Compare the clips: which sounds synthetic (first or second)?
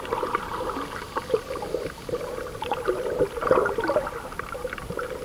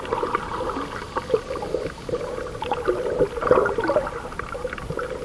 first